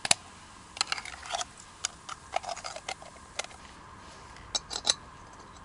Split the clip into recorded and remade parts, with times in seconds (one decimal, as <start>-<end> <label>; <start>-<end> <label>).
0.0-5.6 recorded